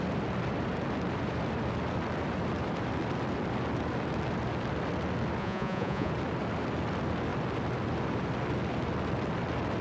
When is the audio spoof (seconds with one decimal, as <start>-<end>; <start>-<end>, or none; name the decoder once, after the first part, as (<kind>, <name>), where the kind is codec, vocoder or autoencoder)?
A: 5.4-6.1 (vocoder, Vocos)